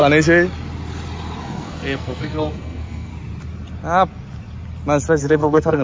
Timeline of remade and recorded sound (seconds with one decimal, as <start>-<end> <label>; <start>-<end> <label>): 0.0-1.4 recorded; 1.4-3.1 remade; 3.1-5.2 recorded; 5.2-5.8 remade